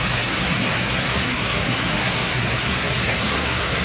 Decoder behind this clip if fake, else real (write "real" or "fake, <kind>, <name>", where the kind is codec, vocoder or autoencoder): fake, codec, SNAC